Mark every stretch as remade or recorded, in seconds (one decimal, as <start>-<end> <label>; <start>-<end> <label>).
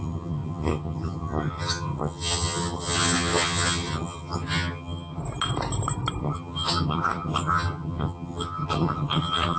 0.0-5.2 remade; 5.2-6.2 recorded; 6.2-9.6 remade